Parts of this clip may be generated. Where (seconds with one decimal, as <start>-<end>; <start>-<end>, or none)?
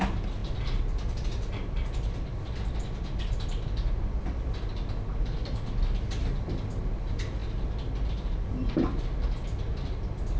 none